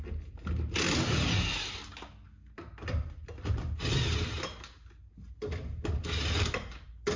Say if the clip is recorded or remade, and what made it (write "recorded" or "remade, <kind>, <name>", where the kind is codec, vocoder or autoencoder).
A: recorded